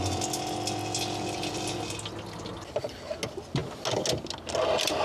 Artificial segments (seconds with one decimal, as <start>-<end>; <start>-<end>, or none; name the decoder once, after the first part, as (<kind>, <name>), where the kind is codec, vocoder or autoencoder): none

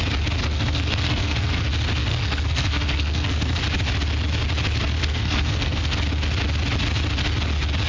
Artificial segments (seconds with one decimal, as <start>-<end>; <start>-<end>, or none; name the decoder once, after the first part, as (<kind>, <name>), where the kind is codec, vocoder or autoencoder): 0.4-1.6 (codec, SNAC); 2.0-3.6; 5.0-6.0

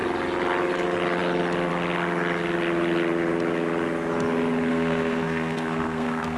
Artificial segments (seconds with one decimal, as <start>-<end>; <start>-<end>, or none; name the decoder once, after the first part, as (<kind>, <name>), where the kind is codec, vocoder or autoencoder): 4.7-6.4 (codec, SNAC)

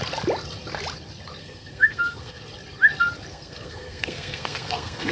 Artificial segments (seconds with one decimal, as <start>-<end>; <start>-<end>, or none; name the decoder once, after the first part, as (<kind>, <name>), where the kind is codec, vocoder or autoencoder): 1.4-2.4 (codec, SNAC); 3.3-5.1

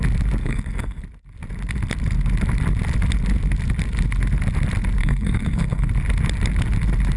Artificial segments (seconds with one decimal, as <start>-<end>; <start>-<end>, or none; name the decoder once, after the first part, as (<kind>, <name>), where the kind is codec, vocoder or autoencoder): 0.4-1.0 (codec, SNAC); 5.0-5.9